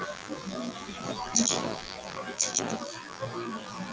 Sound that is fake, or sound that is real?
fake